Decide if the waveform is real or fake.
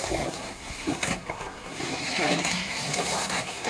fake